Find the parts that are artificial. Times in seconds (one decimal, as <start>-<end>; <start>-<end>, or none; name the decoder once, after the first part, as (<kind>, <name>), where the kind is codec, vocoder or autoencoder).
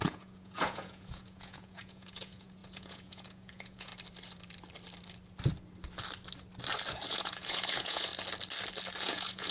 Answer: 0.0-3.9 (vocoder, Vocos); 6.9-8.1; 9.0-9.5